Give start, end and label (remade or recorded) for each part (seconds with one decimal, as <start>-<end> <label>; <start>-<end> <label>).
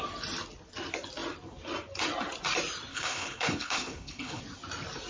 0.0-2.9 recorded; 2.9-4.4 remade; 4.4-5.1 recorded